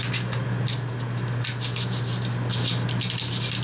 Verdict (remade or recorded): recorded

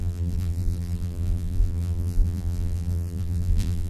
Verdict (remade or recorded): remade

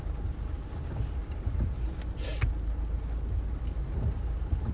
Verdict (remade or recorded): recorded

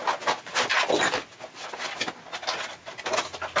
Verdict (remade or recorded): recorded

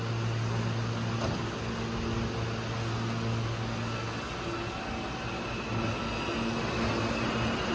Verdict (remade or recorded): recorded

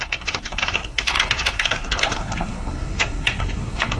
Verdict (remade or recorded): remade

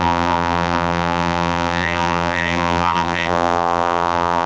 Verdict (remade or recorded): remade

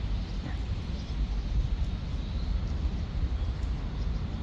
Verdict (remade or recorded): recorded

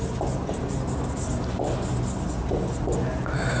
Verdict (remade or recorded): recorded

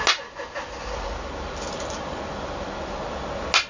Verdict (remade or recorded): recorded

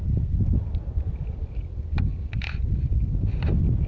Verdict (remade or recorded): remade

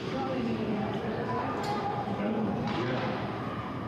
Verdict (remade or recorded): remade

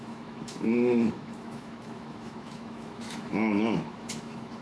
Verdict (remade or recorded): remade